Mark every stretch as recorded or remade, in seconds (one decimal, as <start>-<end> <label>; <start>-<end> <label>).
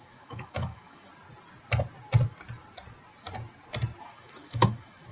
0.0-1.1 remade; 1.1-4.1 recorded; 4.1-5.1 remade